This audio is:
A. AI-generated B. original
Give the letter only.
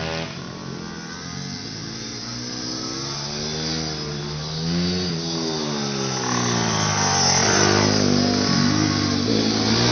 B